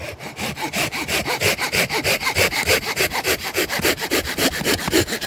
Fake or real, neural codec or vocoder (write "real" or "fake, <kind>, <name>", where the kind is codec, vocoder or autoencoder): fake, vocoder, BigVGAN v2